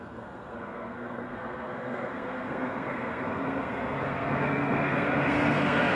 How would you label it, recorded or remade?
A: remade